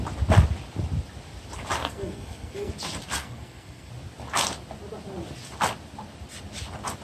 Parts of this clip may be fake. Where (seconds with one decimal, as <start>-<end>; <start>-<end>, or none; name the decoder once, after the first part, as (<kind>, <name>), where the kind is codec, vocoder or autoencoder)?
1.8-2.7 (codec, SNAC); 3.2-3.9